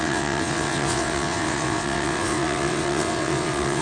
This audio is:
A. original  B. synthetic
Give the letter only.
B